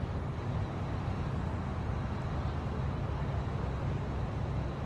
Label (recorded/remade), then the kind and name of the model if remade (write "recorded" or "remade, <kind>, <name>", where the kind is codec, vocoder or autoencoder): recorded